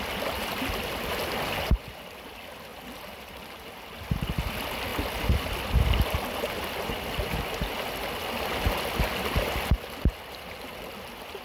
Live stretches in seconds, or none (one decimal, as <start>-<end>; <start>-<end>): 0.0-11.4

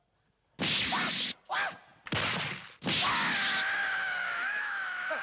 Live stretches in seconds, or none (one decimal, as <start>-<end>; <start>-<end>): 0.0-3.8